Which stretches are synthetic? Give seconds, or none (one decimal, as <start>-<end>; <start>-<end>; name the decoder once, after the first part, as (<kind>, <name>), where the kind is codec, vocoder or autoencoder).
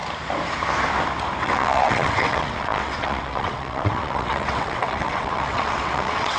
1.4-6.4 (vocoder, WaveNeXt)